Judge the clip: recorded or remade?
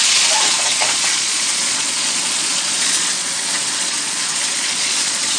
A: remade